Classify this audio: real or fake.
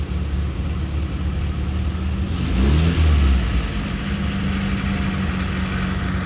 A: real